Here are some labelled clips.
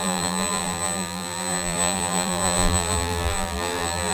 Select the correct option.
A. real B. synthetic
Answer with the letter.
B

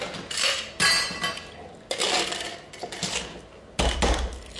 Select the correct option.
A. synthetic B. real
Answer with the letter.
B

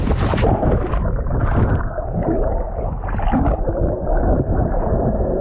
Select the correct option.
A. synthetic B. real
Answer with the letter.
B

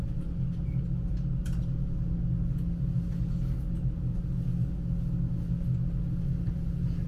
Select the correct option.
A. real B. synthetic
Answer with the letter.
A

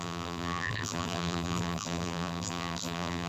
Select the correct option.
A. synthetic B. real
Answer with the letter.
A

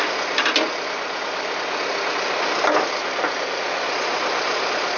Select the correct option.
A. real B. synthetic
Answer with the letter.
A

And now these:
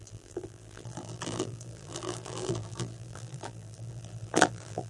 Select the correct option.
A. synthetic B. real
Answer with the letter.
A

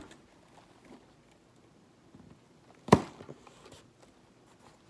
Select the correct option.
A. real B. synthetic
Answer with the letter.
A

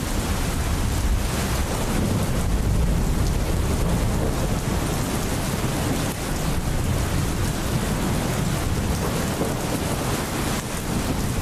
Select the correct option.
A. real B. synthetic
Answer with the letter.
A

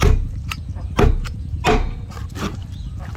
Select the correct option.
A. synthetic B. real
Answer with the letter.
B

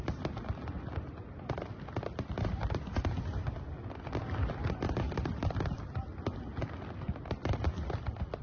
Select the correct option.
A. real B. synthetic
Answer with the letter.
A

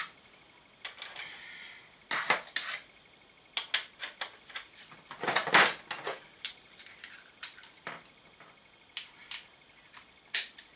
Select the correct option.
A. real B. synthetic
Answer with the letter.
A